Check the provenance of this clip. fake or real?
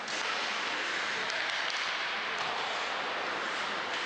real